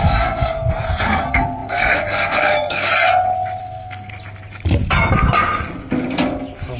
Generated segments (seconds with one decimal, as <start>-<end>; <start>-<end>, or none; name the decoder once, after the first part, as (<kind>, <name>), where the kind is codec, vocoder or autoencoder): 0.0-2.9 (codec, SNAC); 3.6-4.1